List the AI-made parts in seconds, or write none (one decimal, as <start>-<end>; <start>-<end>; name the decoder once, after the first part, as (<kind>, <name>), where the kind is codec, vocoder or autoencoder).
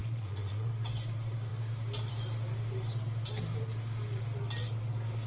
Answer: 0.0-0.7 (vocoder, Vocos)